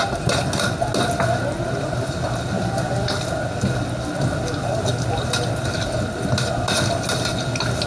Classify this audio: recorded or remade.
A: recorded